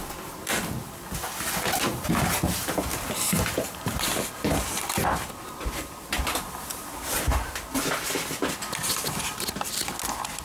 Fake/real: real